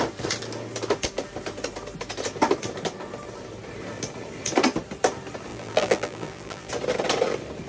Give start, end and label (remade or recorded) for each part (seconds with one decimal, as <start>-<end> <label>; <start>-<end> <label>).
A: 0.0-5.5 recorded; 5.5-6.7 remade; 6.7-7.7 recorded